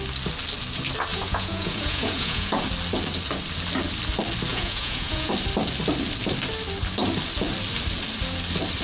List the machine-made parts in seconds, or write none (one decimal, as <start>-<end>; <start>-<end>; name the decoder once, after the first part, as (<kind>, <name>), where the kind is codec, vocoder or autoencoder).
1.1-2.6 (vocoder, Vocos); 4.5-5.3